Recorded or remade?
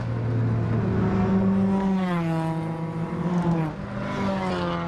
recorded